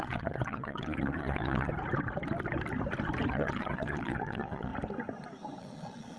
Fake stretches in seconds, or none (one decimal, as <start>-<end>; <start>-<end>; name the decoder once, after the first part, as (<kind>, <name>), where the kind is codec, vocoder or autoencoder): 0.0-1.7 (vocoder, Vocos); 3.3-4.7; 5.6-6.2